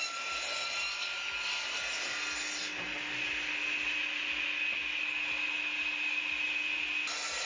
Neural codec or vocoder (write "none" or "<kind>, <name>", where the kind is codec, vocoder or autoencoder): none